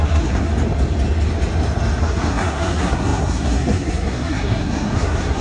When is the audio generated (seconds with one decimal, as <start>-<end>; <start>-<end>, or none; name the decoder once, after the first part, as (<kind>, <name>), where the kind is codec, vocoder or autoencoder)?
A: 0.0-0.5 (codec, SNAC); 2.0-5.4